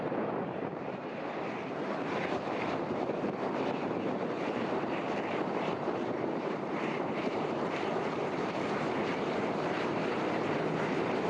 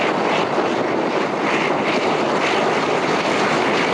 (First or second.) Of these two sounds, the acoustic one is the second